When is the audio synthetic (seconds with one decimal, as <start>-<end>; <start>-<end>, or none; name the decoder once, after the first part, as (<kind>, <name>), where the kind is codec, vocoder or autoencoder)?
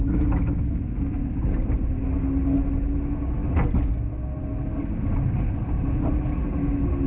none